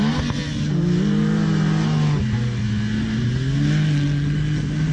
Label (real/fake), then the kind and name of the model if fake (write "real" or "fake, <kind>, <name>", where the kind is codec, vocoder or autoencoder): real